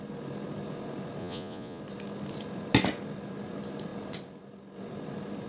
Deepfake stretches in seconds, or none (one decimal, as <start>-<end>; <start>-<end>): 1.2-1.8